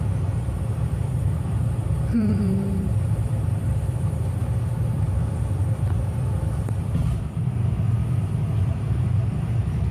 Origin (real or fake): fake